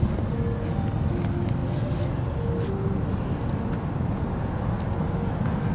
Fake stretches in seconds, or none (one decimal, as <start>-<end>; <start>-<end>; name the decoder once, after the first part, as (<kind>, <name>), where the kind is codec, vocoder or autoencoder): none